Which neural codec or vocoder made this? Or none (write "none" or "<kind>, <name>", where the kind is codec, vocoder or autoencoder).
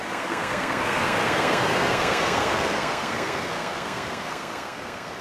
codec, SNAC